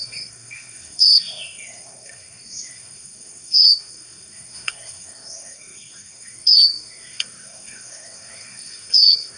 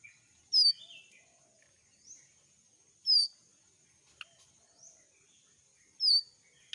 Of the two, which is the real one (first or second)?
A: second